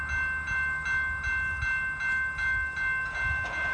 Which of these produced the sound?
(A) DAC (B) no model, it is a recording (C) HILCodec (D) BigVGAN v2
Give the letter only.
B